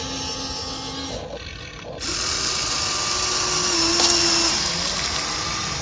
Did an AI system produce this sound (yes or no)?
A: no